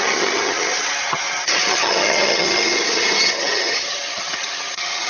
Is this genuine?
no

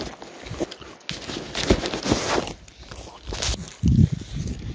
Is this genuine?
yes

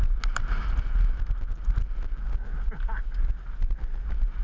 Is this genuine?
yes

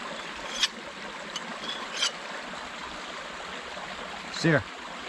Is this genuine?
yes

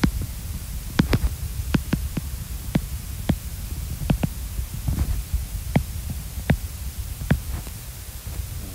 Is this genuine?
no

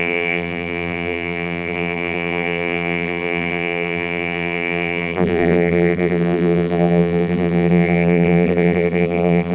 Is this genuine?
no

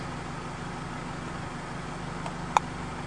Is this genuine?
yes